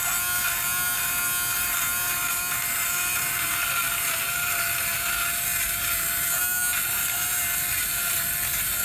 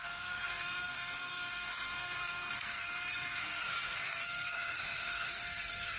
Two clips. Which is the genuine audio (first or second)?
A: first